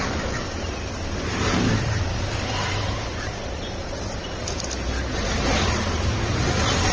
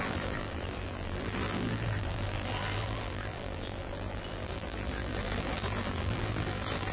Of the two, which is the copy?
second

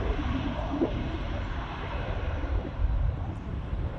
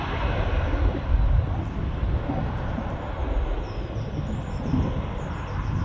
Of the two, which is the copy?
first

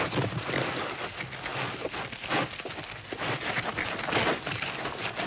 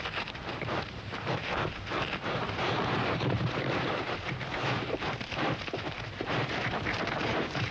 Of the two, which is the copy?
second